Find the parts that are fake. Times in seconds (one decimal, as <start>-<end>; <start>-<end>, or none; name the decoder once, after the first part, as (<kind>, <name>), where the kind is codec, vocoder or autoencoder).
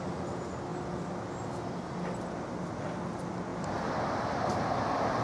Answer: none